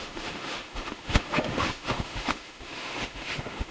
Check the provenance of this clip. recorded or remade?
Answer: remade